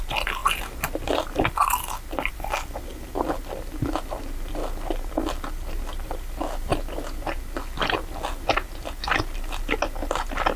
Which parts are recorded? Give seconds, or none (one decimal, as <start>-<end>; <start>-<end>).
0.0-10.6